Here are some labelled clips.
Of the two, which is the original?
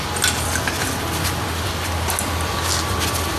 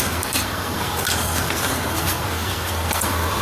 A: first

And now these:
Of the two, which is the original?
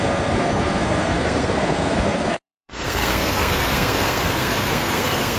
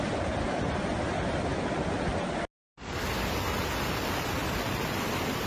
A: second